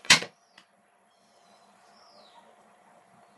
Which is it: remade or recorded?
remade